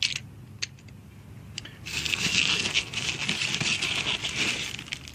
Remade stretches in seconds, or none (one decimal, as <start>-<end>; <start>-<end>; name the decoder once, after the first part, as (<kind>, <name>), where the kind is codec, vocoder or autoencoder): 1.9-3.1 (codec, SNAC)